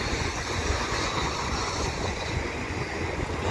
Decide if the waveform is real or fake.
fake